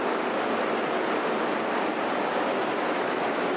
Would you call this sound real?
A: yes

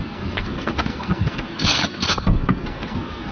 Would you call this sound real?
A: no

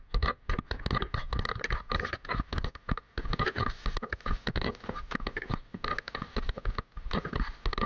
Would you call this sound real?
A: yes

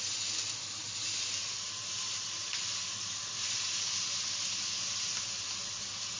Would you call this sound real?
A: yes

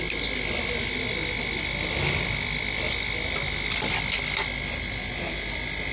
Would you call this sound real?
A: yes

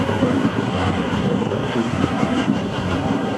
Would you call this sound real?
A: no